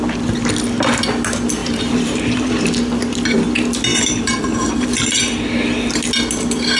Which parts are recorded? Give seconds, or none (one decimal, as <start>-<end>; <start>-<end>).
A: 0.0-1.6; 2.5-3.9; 5.2-6.8